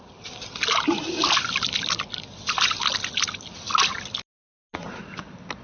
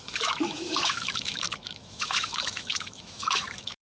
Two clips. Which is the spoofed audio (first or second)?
second